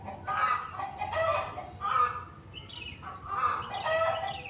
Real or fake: real